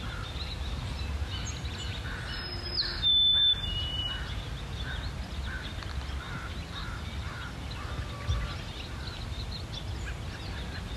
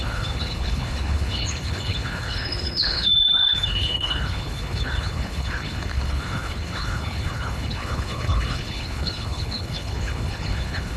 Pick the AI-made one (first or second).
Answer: second